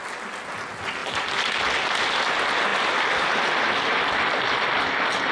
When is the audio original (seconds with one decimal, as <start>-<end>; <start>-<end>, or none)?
0.0-1.0; 1.6-2.7; 4.7-5.3